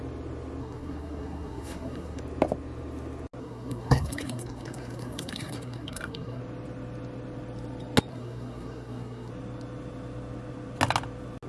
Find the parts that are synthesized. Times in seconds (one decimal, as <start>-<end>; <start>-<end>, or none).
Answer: 0.6-2.2; 3.4-6.4; 8.1-9.3